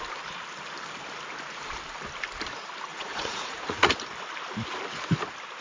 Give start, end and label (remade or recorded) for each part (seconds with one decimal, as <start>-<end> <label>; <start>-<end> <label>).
0.0-2.9 recorded; 2.9-3.9 remade; 3.9-5.6 recorded